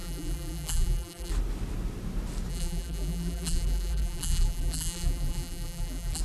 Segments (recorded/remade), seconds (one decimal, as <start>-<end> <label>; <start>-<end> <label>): 0.0-1.3 remade; 1.3-2.5 recorded; 2.5-6.2 remade